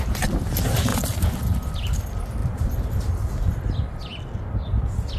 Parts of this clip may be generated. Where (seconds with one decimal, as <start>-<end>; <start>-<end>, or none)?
2.4-3.0